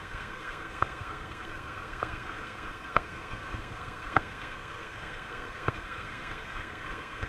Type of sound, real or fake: fake